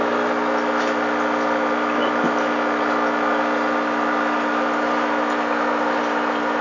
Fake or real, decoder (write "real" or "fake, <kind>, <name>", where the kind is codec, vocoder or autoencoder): real